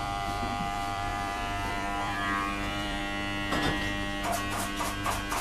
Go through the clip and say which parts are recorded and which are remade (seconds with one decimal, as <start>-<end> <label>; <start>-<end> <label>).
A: 0.0-3.0 remade; 3.0-5.4 recorded